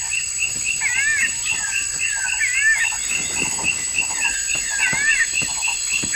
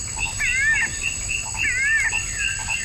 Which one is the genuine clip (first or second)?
second